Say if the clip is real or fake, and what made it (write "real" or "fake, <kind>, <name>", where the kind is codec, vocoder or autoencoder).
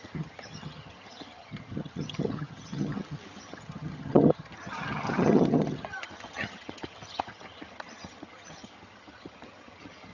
fake, vocoder, HiFi-GAN